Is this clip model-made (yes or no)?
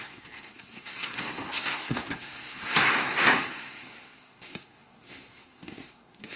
yes